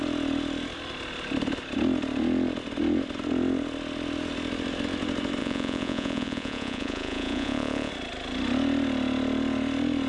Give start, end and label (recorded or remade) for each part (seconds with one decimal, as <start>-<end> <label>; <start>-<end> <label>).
0.0-5.4 recorded; 5.4-7.9 remade; 7.9-10.1 recorded